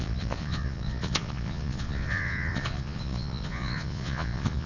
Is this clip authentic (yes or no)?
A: no